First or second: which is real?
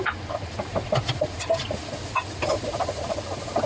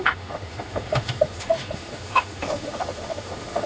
first